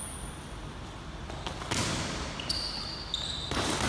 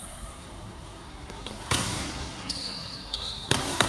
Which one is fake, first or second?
second